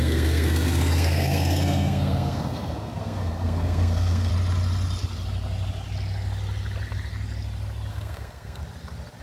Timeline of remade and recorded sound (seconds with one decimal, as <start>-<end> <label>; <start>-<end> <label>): 0.0-4.3 remade; 4.3-7.9 recorded; 7.9-8.6 remade; 8.6-9.2 recorded